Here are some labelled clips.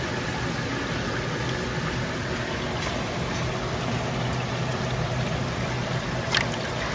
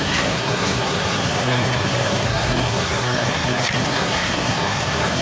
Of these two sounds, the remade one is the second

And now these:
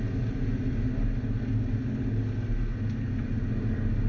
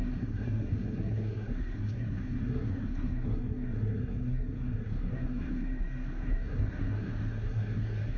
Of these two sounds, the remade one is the second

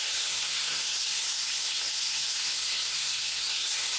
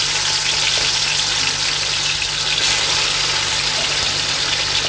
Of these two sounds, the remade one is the first